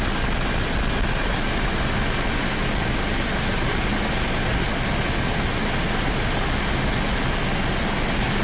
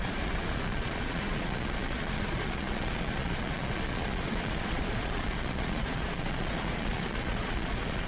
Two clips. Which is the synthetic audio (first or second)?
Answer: second